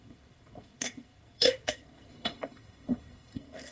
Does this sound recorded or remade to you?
remade